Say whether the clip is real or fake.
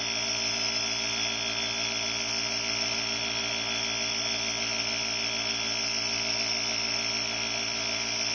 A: real